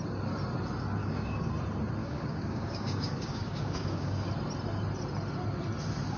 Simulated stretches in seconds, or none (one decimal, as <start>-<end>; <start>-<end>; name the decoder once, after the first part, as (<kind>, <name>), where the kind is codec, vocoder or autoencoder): 1.0-1.5 (codec, DAC); 2.0-4.3